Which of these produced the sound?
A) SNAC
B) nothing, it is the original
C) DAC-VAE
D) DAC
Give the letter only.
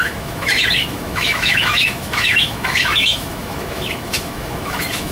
C